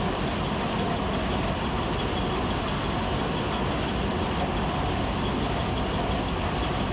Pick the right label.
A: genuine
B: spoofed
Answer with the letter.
A